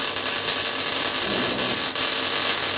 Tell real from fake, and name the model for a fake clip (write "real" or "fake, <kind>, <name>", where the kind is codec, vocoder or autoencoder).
real